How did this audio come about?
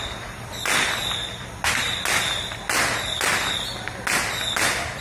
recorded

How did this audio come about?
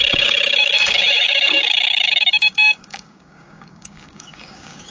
remade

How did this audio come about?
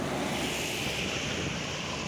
recorded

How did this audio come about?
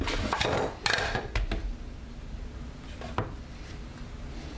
recorded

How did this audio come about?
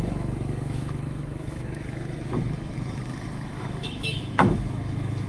remade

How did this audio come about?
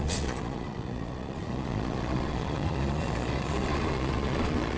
remade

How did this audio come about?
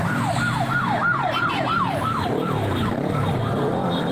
remade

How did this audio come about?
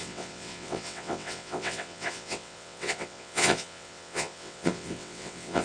remade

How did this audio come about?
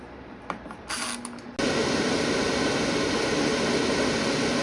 recorded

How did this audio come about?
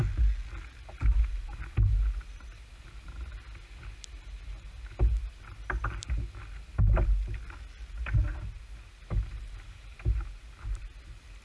recorded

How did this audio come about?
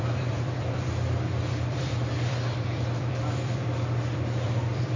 remade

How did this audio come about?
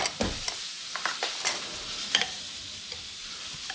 recorded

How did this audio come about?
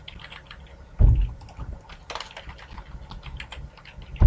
recorded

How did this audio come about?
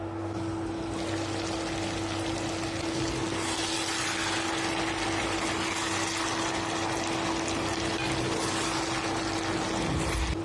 recorded